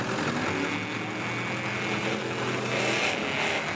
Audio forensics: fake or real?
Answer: real